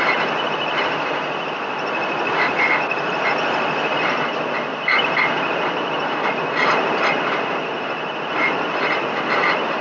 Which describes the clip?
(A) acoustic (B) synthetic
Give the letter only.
A